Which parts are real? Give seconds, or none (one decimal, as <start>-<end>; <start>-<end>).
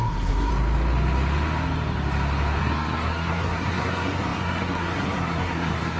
0.5-2.6